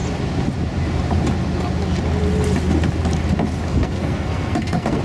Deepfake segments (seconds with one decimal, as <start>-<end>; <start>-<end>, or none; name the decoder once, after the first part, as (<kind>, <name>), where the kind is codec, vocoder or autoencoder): 3.7-5.0 (codec, SNAC)